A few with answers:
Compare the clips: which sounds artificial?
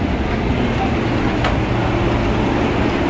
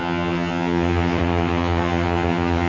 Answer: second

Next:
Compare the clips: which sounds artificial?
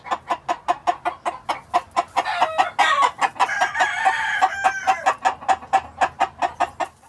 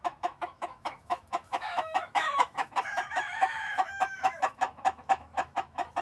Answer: second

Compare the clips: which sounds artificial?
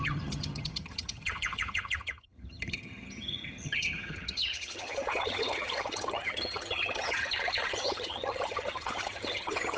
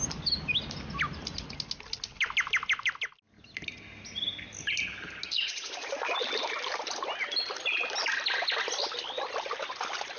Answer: first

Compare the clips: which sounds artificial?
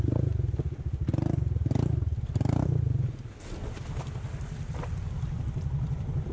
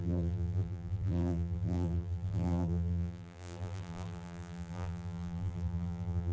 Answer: second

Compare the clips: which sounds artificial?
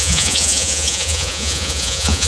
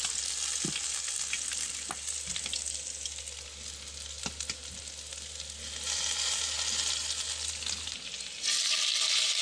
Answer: first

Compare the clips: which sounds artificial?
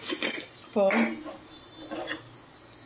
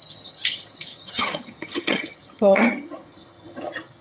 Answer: second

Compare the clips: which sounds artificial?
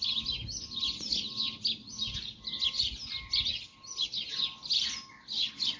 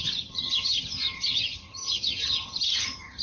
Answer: second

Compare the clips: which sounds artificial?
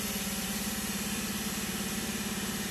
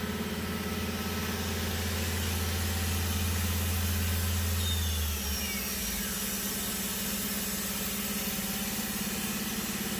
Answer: first